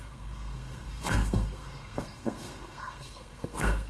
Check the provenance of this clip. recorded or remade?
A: remade